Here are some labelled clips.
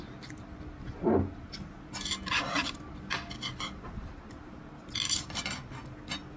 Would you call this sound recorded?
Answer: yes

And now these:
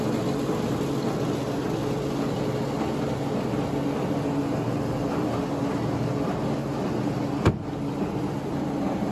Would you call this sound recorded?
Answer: yes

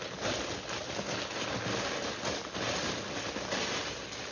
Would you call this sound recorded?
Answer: yes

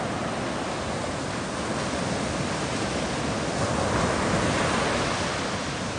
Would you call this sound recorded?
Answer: yes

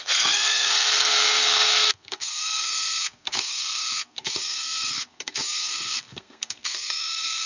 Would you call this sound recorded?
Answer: no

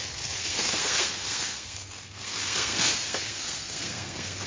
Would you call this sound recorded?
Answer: no